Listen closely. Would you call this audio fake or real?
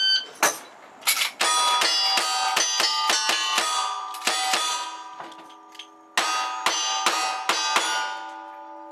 real